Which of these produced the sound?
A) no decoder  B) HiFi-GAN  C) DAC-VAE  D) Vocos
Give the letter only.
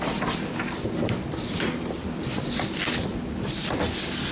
A